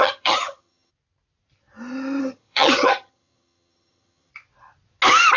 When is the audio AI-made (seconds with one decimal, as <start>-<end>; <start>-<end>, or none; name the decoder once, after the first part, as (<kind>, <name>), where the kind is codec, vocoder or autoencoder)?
0.0-0.9 (vocoder, HiFi-GAN); 2.2-4.3